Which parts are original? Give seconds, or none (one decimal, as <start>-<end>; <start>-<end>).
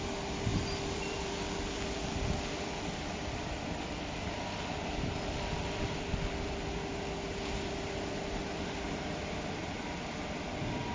0.0-10.9